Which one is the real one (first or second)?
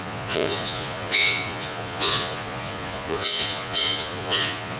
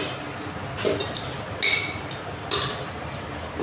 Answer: second